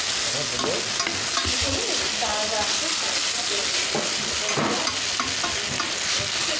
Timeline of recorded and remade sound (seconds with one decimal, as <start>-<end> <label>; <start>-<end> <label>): 0.0-6.6 recorded